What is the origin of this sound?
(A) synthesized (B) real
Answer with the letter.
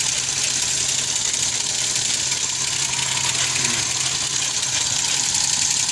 B